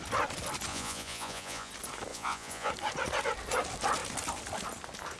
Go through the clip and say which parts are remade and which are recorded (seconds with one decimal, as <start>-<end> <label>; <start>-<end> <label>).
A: 0.0-0.7 recorded; 0.7-1.7 remade; 1.7-2.1 recorded; 2.1-2.7 remade; 2.7-5.2 recorded